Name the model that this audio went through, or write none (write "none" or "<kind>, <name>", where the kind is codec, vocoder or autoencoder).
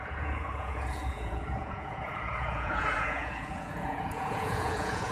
vocoder, Vocos